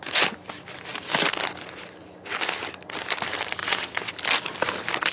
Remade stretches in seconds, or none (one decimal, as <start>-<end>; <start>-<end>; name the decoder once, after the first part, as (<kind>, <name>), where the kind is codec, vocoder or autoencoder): 3.6-4.1 (vocoder, WaveNeXt)